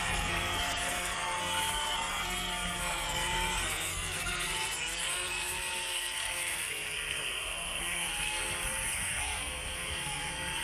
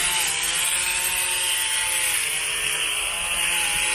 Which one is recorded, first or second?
second